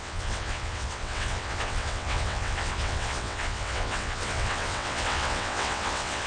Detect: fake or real fake